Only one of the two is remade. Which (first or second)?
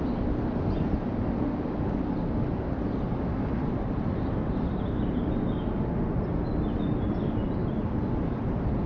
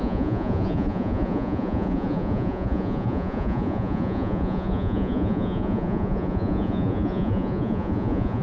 second